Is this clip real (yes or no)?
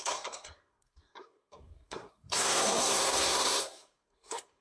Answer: no